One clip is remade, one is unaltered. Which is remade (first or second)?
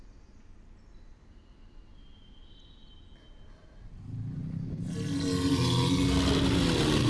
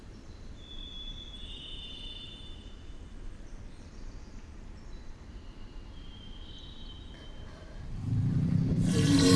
second